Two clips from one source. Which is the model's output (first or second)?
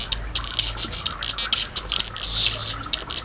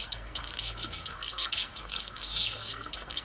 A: second